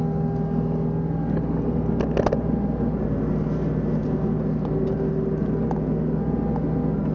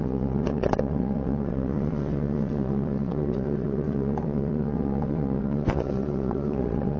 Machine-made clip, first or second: second